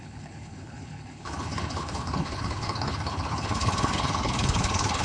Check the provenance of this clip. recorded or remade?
remade